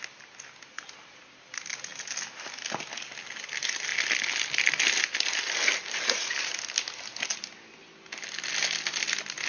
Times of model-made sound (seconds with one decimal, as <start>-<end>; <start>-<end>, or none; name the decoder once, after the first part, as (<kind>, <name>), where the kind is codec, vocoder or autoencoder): none